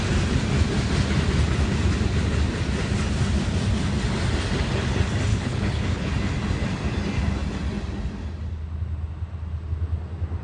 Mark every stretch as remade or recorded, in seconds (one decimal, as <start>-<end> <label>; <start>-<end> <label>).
0.0-5.3 recorded; 5.3-6.1 remade; 6.1-10.4 recorded